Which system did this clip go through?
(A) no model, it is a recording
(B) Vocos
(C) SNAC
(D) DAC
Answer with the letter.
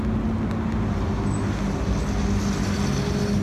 A